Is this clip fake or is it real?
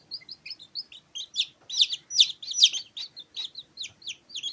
real